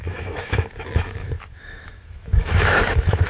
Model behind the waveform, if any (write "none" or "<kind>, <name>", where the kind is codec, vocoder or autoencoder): autoencoder, DAC-VAE